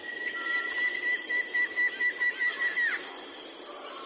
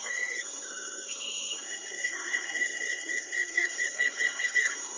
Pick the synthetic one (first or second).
second